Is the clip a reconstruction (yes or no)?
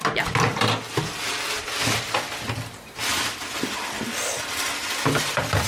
no